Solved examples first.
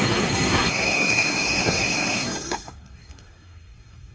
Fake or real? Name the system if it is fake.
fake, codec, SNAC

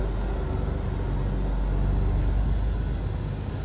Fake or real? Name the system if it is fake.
real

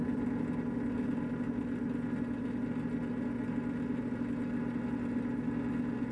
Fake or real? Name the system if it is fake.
real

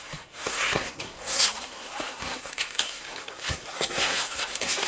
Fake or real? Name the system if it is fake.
fake, codec, SNAC